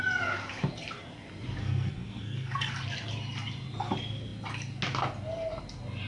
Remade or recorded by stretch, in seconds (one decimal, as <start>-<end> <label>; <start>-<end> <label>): 0.0-1.6 recorded; 1.6-2.7 remade; 2.7-6.1 recorded